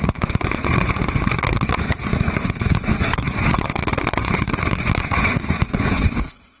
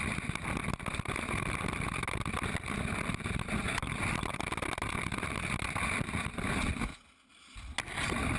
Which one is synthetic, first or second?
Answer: first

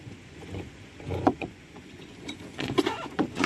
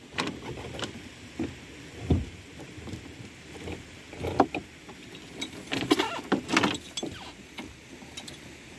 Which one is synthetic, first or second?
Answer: first